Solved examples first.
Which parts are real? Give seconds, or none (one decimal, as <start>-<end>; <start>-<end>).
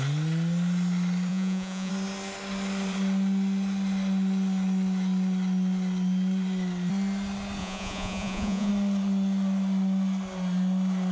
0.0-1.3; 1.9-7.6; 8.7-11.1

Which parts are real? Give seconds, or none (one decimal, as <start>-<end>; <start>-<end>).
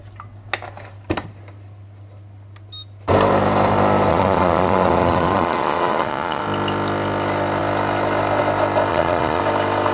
0.0-4.1; 6.4-8.9; 9.4-9.9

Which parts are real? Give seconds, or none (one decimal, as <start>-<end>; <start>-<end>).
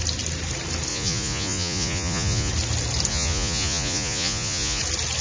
0.0-0.9; 2.5-3.1; 4.8-5.2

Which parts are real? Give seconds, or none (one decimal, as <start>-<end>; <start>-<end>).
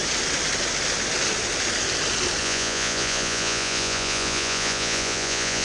0.0-2.4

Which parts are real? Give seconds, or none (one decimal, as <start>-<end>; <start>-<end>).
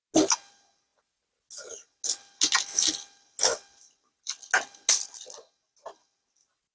0.0-6.7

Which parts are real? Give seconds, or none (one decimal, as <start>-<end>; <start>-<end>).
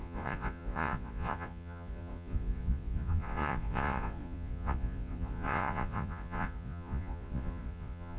none